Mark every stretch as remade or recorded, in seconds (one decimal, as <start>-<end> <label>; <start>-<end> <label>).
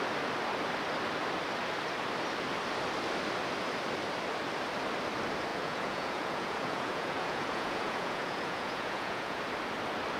0.0-5.5 recorded; 5.5-9.4 remade; 9.4-10.2 recorded